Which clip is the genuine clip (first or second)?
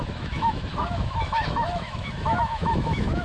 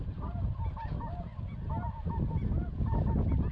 second